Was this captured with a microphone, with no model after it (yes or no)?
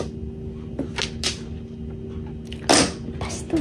yes